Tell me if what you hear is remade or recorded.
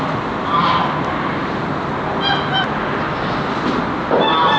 recorded